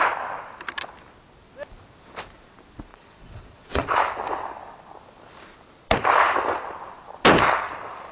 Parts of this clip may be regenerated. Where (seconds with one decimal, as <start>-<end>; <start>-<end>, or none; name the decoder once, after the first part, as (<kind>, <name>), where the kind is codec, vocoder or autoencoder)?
2.9-4.0 (vocoder, Vocos)